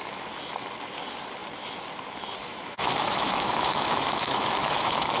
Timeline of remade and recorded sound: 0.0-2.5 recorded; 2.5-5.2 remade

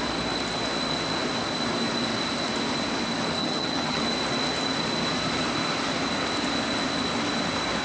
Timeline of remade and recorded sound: 0.0-3.4 recorded; 3.4-4.0 remade; 4.0-7.8 recorded

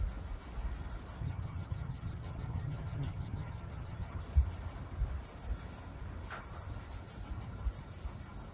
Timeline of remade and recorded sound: 0.0-1.2 recorded; 1.2-4.2 remade; 4.2-8.5 recorded